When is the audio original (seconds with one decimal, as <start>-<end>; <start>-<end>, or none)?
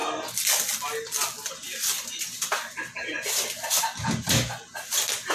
0.0-5.3